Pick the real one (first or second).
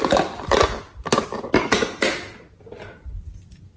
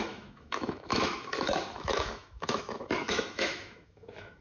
first